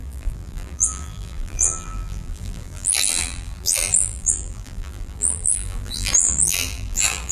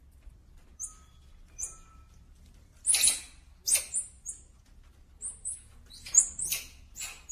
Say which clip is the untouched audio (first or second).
second